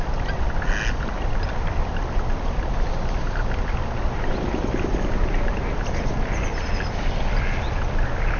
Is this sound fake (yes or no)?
no